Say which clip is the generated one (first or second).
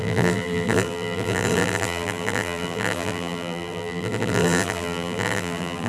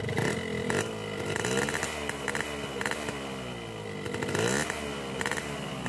first